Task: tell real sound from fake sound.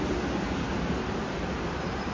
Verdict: fake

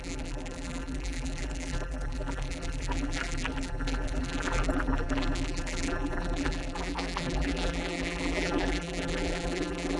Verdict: fake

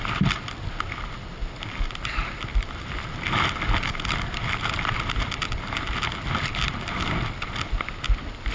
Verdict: real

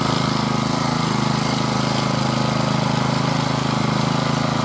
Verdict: real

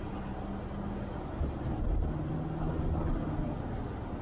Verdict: real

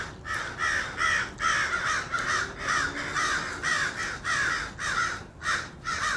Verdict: real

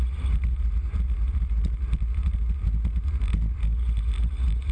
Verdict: fake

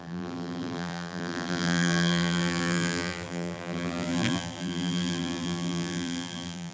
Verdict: fake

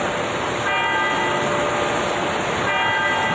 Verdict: real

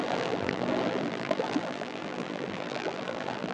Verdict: fake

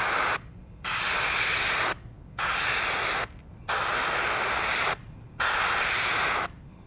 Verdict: real